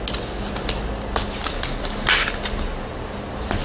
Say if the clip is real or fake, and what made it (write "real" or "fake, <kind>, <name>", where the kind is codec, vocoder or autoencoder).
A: real